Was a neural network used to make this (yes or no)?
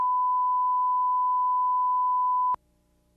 no